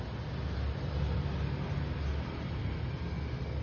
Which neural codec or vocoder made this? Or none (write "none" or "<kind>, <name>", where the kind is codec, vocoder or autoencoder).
none